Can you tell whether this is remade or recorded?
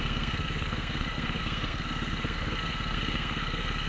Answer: remade